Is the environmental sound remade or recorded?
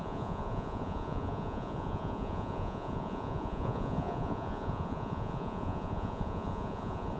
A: remade